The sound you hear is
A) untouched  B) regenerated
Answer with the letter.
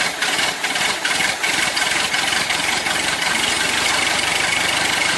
B